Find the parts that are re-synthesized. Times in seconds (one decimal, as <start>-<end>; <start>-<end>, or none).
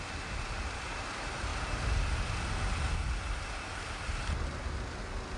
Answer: none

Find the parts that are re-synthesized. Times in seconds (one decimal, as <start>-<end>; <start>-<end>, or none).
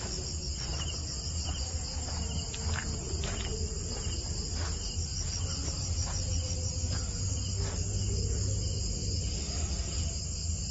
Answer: none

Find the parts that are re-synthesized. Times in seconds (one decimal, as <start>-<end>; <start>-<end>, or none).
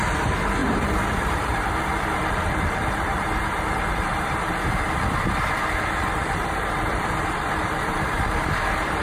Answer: 0.0-9.0